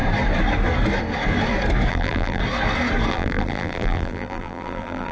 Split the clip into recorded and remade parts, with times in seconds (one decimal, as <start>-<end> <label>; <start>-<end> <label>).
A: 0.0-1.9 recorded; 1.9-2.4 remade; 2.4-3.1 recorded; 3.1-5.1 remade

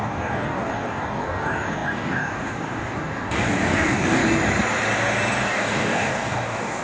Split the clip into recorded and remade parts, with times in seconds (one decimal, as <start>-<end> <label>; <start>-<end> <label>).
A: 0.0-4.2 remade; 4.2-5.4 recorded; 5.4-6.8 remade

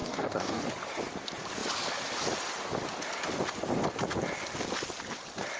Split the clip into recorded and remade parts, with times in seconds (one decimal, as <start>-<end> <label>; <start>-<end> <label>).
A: 0.0-0.6 remade; 0.6-5.6 recorded

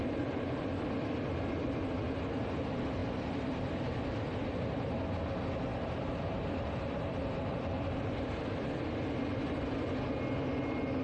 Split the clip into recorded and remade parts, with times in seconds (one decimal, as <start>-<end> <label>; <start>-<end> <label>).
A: 0.0-0.6 remade; 0.6-3.0 recorded; 3.0-4.3 remade; 4.3-5.7 recorded; 5.7-6.8 remade; 6.8-11.0 recorded

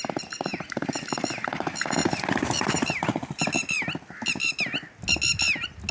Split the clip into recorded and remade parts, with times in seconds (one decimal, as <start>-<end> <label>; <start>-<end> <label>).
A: 0.0-5.9 recorded

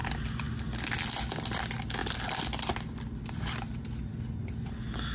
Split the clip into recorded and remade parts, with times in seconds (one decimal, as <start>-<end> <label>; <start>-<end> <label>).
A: 0.0-5.1 recorded